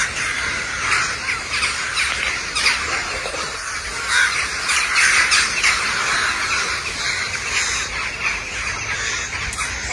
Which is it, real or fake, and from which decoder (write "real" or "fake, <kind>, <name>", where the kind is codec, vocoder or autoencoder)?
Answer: real